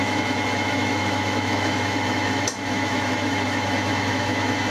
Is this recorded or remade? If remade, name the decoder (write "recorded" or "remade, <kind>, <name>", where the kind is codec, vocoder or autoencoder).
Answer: remade, autoencoder, DAC-VAE